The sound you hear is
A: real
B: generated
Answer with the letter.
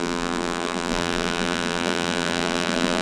B